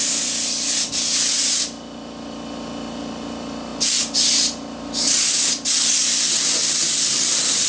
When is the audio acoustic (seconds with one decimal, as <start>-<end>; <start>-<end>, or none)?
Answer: none